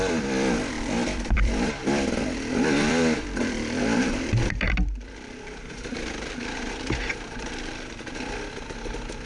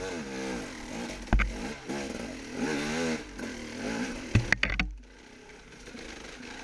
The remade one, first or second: first